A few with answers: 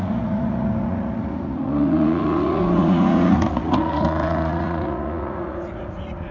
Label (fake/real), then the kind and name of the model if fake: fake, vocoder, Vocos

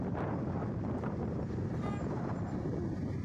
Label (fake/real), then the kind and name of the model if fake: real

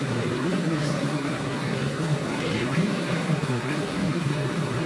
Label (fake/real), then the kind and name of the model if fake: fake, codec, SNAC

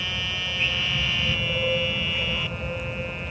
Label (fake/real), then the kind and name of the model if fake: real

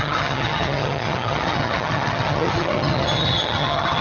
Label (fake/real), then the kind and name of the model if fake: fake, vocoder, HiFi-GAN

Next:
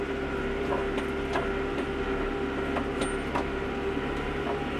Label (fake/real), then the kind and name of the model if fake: real